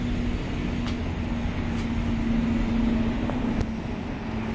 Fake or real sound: real